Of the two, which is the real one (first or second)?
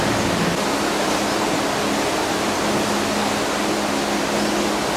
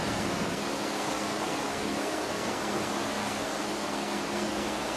first